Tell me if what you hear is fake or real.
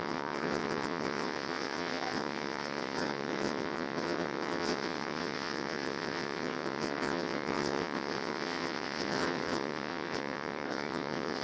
fake